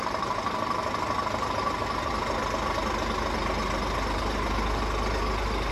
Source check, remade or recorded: recorded